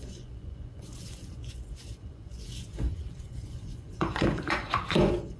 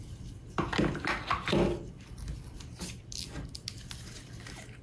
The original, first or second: second